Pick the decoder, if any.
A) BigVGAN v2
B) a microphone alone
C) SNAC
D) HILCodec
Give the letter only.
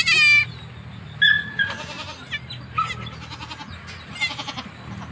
B